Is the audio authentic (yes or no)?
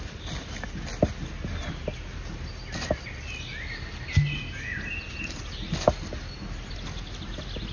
yes